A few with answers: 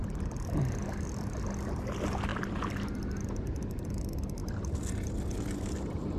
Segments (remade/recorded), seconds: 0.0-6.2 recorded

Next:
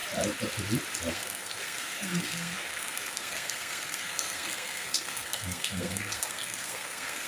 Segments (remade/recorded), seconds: 0.0-1.1 recorded; 1.1-7.3 remade

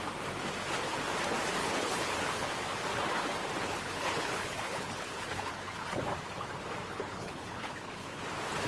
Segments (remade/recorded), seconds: 0.0-1.6 recorded; 1.6-2.5 remade; 2.5-3.6 recorded; 3.6-6.0 remade; 6.0-6.8 recorded; 6.8-8.2 remade; 8.2-8.7 recorded

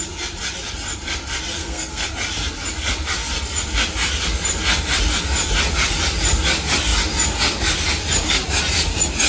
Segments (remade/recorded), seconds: 0.0-1.6 recorded; 1.6-2.1 remade; 2.1-9.3 recorded

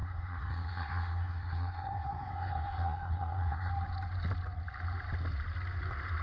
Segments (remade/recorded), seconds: 0.0-3.7 remade; 3.7-6.2 recorded

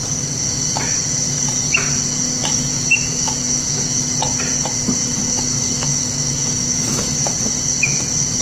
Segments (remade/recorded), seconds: 0.0-2.4 recorded; 2.4-4.0 remade; 4.0-5.0 recorded; 5.0-7.2 remade; 7.2-8.4 recorded